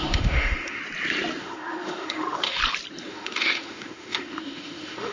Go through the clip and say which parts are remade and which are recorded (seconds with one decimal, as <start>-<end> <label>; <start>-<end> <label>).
0.0-0.8 remade; 0.8-1.4 recorded; 1.4-2.6 remade; 2.6-3.1 recorded; 3.1-5.1 remade